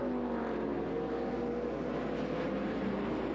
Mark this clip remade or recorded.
recorded